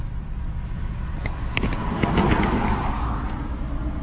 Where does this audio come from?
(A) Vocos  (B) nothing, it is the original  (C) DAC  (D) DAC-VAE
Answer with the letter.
B